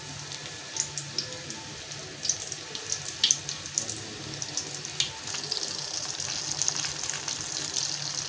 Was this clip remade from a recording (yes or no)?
no